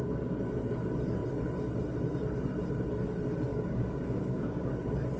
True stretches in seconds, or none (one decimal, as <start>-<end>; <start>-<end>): 0.0-3.5; 4.7-5.2